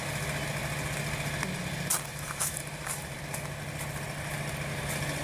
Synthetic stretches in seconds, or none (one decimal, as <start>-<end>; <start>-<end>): 2.1-3.2